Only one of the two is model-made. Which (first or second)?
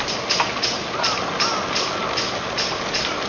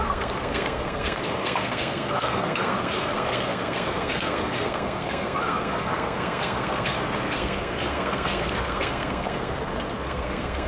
second